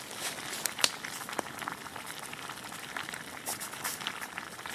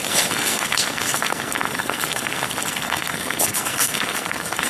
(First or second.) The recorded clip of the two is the first